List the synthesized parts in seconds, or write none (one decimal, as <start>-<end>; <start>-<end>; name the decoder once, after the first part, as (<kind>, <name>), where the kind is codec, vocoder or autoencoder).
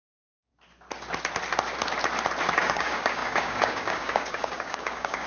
0.0-0.5 (codec, DAC); 2.6-5.3